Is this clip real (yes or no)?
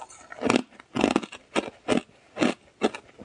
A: yes